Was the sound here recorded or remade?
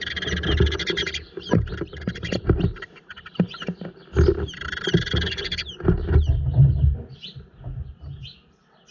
recorded